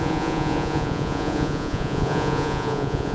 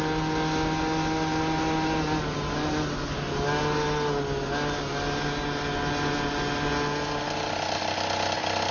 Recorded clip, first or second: second